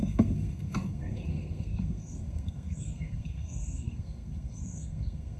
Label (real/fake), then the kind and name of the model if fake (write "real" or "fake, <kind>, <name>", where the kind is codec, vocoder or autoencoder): fake, codec, SNAC